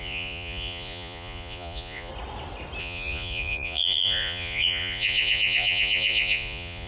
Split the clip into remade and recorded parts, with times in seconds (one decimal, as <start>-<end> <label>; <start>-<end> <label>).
0.0-2.1 remade; 2.1-2.8 recorded; 2.8-6.9 remade